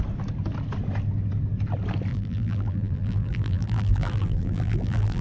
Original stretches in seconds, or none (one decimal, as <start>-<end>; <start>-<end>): 0.0-2.1